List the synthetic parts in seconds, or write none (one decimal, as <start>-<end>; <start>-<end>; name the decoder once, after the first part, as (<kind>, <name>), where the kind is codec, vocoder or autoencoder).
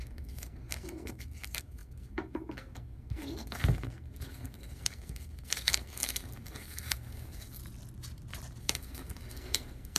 0.0-7.6 (codec, SNAC); 8.6-10.0